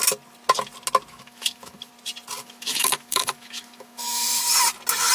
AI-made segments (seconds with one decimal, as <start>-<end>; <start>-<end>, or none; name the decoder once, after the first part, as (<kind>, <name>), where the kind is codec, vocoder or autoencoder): 1.1-1.9 (autoencoder, DAC-VAE); 2.4-4.4